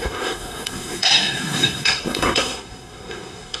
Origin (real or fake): fake